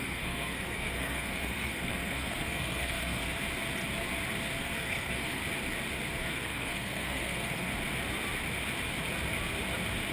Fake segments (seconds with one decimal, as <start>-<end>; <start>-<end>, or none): 0.0-3.2; 4.6-5.4; 6.2-7.7